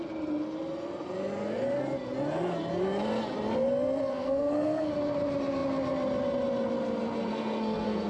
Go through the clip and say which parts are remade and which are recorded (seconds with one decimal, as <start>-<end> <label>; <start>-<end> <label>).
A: 0.0-4.1 recorded; 4.1-4.9 remade; 4.9-7.3 recorded; 7.3-8.1 remade